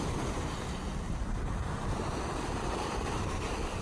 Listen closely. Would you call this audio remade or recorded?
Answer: remade